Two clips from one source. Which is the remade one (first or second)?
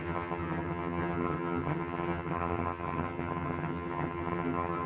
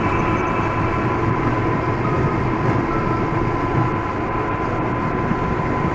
first